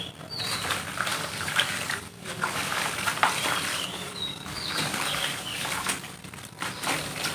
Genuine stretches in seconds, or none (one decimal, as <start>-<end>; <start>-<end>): 0.0-1.1; 2.9-3.7; 6.1-7.3

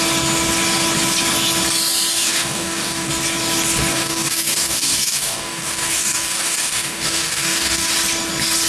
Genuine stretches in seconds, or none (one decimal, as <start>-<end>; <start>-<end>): 0.0-2.1; 3.1-3.9; 7.9-8.7